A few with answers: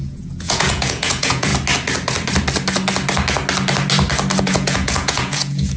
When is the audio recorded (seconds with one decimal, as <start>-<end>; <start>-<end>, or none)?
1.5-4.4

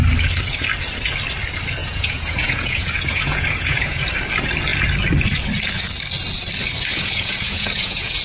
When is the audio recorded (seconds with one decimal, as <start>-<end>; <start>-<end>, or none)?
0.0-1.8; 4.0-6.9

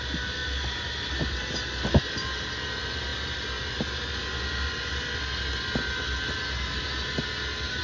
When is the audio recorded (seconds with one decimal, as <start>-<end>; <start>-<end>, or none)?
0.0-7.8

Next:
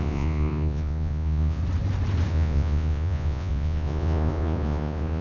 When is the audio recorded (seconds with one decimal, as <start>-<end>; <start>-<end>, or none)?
1.6-2.3